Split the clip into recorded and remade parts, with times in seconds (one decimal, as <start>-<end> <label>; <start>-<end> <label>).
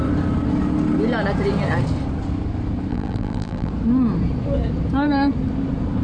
0.0-2.9 recorded; 2.9-3.7 remade; 3.7-6.0 recorded